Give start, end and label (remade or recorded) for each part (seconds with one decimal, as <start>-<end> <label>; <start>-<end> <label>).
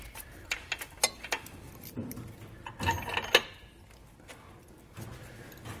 0.0-5.8 recorded